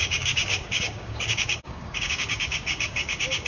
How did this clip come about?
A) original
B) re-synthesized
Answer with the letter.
B